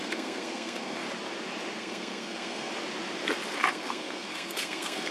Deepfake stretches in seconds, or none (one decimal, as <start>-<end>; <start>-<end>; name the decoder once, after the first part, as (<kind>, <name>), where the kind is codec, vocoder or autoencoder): 0.0-1.0 (codec, SNAC); 1.8-2.7; 3.7-5.1